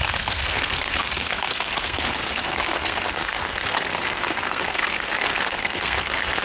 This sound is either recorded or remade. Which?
remade